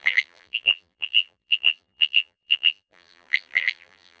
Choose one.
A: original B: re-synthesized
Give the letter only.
B